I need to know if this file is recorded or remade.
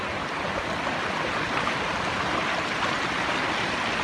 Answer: recorded